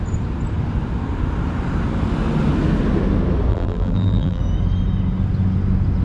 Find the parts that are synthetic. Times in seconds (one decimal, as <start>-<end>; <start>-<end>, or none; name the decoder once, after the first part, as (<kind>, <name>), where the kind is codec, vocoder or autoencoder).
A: 3.5-4.4 (vocoder, BigVGAN v2)